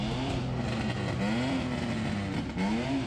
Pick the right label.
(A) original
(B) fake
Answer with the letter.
A